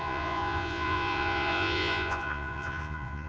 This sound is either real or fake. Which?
fake